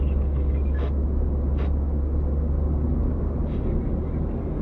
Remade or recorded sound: recorded